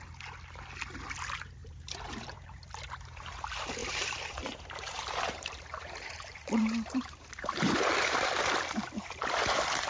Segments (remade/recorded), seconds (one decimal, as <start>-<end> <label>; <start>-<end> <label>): 0.0-1.6 recorded; 1.6-2.8 remade; 2.8-3.8 recorded; 3.8-8.1 remade; 8.1-9.9 recorded